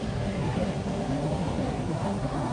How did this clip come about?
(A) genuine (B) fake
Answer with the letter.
B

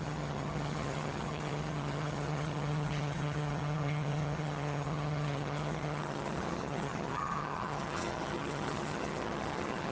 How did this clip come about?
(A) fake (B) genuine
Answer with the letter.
A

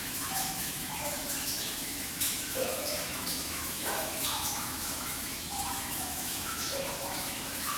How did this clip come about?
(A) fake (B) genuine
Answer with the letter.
A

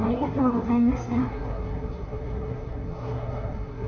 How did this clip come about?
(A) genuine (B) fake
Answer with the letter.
B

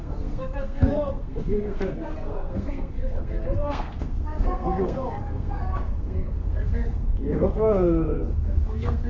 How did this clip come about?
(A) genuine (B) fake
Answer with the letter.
B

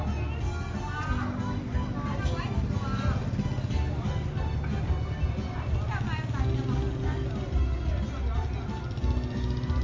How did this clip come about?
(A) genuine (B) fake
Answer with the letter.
A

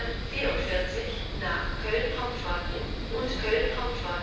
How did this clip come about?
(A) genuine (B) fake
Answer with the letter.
A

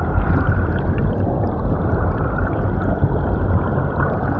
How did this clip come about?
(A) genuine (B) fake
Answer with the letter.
B